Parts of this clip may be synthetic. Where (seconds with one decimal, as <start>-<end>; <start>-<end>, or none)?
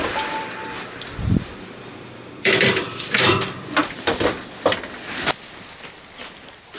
0.0-3.4; 3.8-4.4